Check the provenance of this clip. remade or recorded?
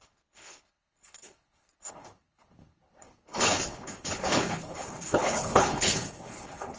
remade